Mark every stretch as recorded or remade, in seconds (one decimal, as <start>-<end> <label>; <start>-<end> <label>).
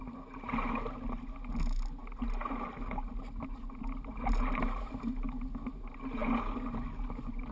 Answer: 0.0-7.5 recorded